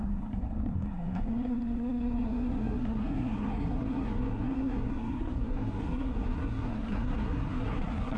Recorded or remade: remade